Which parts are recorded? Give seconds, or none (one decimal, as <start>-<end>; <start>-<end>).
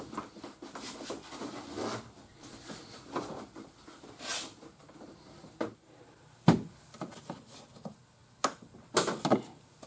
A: 0.0-9.9